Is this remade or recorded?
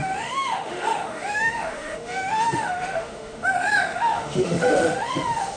remade